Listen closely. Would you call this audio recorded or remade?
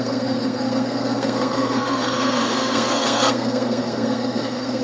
remade